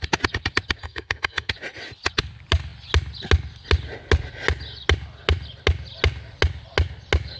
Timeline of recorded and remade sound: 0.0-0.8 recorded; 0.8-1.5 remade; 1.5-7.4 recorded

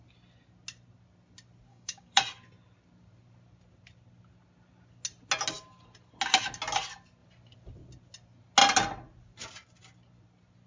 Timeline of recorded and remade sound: 0.0-1.7 recorded; 1.7-2.2 remade; 2.2-10.7 recorded

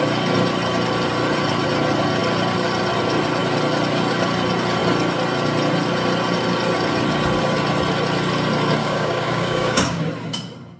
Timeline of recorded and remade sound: 0.0-8.8 recorded; 8.8-10.0 remade; 10.0-10.8 recorded

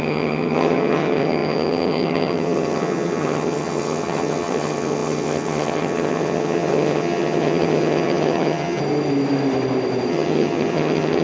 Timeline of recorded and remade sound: 0.0-8.8 remade; 8.8-10.1 recorded; 10.1-11.2 remade